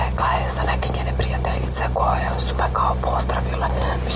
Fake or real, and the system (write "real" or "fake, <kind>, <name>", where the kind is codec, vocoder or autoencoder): real